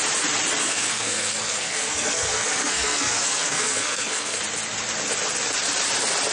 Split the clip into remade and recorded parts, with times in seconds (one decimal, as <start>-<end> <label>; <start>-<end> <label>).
0.0-0.6 recorded; 0.6-4.4 remade; 4.4-6.3 recorded